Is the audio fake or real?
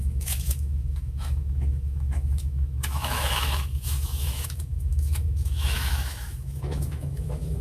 fake